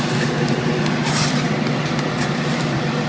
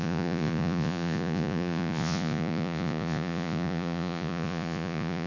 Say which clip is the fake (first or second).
second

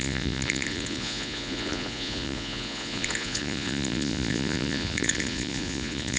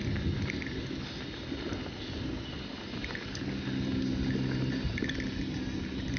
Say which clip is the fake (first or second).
first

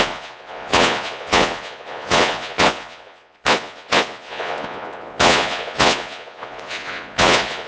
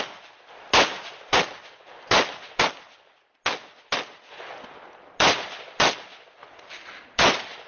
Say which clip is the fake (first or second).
first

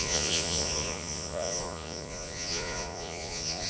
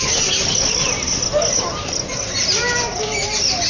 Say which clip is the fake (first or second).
first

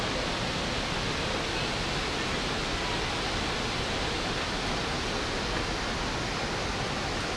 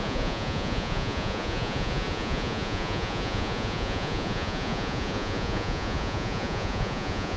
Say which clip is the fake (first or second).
second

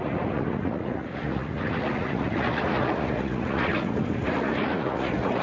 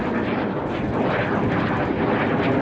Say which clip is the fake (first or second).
first